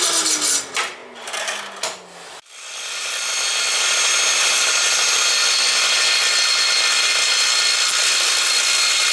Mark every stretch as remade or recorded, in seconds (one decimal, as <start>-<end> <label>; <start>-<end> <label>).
0.0-9.1 recorded